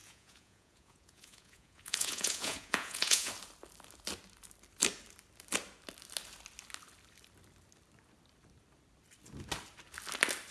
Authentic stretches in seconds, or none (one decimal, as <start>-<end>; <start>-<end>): 3.3-10.5

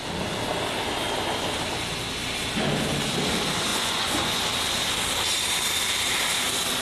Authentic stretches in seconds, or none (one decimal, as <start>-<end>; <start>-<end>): 0.0-3.7; 4.4-6.8

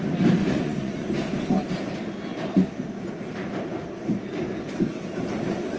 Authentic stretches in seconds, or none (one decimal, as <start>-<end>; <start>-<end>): 0.0-0.4; 1.1-5.8